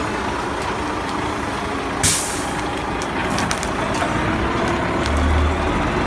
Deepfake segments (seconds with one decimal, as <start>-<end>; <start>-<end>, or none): none

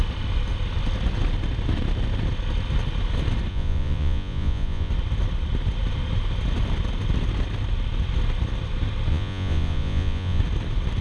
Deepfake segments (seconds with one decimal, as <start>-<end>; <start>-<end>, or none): 3.5-4.9; 9.1-10.4

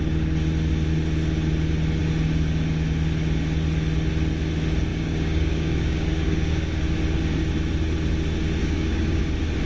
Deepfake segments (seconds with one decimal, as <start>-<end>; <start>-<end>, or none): 4.9-6.8; 8.6-9.2

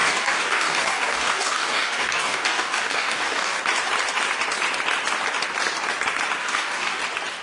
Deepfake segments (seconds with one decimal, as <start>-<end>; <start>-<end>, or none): 0.0-3.6; 6.4-7.0

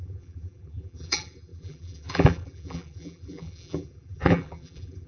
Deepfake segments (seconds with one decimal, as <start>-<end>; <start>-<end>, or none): 0.0-5.1

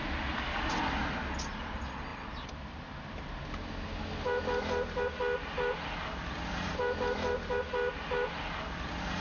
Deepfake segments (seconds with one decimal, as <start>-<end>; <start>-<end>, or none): 0.0-0.9; 2.1-2.8